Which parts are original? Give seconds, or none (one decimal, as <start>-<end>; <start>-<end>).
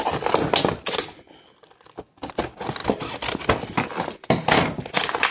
0.0-5.3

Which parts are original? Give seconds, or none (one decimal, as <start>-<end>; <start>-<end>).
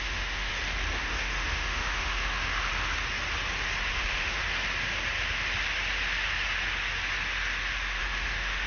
0.5-1.0; 2.7-4.0; 4.4-8.0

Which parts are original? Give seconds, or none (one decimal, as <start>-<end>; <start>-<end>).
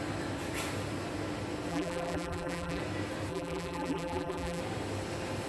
0.0-1.7; 2.8-3.3; 4.6-5.5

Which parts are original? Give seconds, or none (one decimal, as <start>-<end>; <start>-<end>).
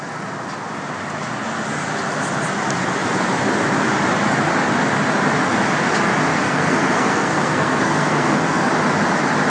0.0-6.3; 8.7-9.5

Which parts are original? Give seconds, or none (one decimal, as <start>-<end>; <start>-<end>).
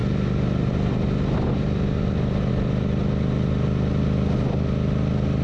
0.0-5.4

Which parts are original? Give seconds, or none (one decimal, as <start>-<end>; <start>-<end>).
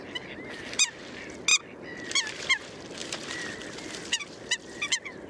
0.0-5.3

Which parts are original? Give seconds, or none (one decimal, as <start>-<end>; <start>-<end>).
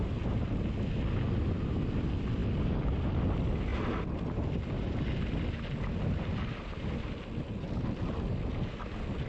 0.0-9.3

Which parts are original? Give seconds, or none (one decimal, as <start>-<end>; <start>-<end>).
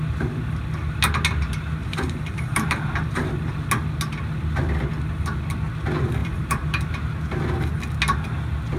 0.0-1.8; 3.5-6.2; 6.9-8.8